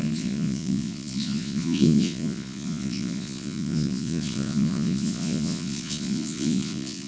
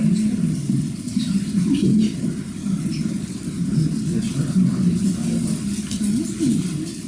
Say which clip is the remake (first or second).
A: first